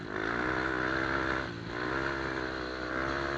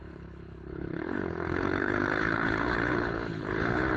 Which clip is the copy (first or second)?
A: second